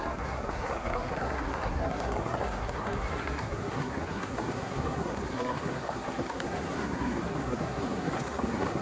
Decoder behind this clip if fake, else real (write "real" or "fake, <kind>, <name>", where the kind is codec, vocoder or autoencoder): fake, codec, SNAC